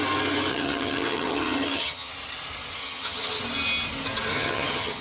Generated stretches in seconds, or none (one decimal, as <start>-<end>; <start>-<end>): 0.5-2.1; 2.8-3.4; 4.3-5.0